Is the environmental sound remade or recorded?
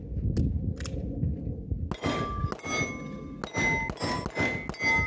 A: recorded